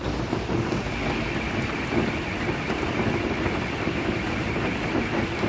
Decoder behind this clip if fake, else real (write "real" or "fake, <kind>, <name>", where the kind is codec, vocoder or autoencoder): real